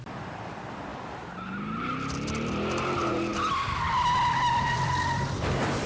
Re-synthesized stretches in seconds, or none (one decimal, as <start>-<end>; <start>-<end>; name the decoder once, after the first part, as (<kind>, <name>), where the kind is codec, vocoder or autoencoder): 0.0-0.9 (vocoder, BigVGAN v2); 1.8-5.9